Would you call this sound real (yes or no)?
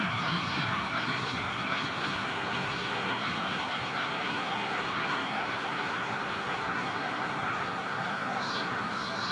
no